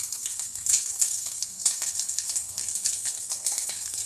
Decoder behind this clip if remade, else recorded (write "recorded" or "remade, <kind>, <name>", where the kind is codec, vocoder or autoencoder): remade, codec, SNAC